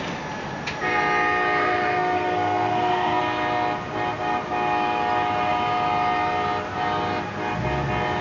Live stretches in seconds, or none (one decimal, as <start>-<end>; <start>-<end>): 0.0-1.6; 3.2-8.2